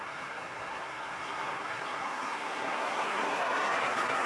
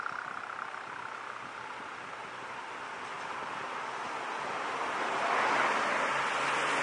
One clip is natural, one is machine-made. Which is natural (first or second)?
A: second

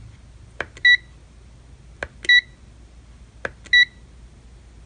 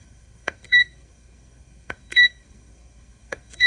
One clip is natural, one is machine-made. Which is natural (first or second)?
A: first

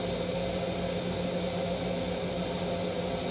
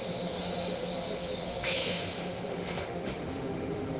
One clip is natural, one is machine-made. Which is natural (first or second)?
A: first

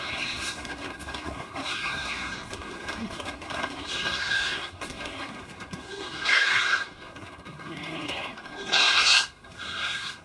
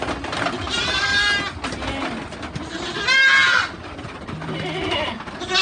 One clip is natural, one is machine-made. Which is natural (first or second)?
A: second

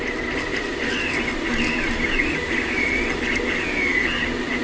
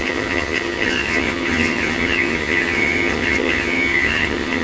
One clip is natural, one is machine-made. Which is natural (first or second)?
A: first